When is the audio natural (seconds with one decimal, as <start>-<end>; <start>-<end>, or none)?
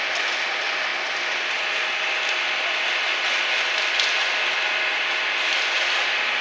0.0-6.4